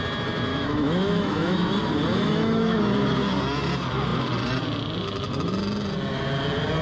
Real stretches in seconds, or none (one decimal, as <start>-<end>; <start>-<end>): 0.0-0.5; 1.7-2.1; 2.8-6.8